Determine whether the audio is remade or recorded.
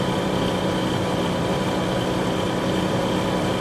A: remade